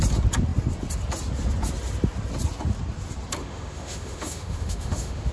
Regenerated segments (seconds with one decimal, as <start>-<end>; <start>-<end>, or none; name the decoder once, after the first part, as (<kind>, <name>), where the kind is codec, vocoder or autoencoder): 3.4-5.3 (autoencoder, DAC-VAE)